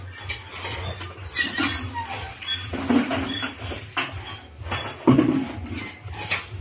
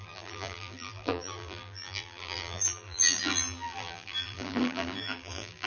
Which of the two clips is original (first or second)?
first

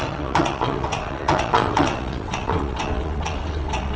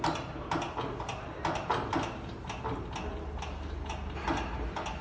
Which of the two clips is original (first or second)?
second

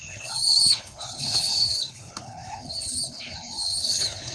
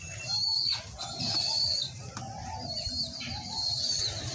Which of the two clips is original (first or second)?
second